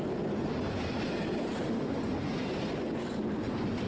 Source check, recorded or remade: recorded